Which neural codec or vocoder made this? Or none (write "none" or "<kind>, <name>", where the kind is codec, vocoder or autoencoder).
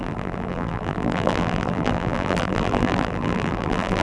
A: vocoder, BigVGAN v2